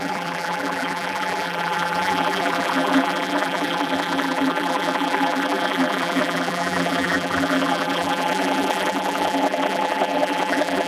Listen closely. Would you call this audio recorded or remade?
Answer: remade